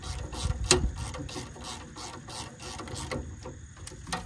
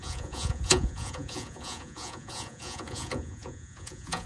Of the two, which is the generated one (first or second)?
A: second